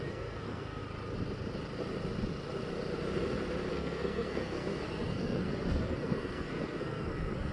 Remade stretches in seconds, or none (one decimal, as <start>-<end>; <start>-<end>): 0.0-0.8; 3.7-7.5